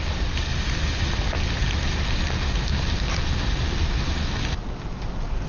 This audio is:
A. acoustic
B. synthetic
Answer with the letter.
A